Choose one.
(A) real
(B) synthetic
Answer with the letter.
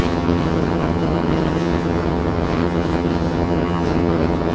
B